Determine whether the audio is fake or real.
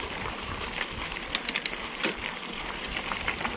real